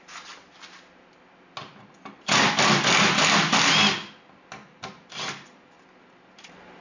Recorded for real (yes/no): yes